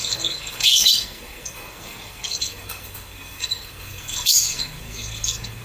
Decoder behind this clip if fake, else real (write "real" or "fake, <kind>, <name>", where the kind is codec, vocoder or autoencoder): fake, codec, SNAC